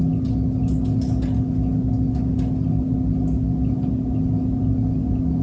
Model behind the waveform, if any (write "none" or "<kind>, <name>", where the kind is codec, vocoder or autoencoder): none